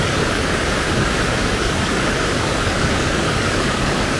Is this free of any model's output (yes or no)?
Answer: no